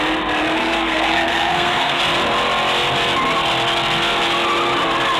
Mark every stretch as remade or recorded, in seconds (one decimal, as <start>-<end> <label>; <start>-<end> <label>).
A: 0.0-0.6 recorded; 0.6-2.0 remade; 2.0-5.2 recorded